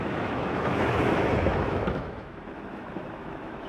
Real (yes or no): no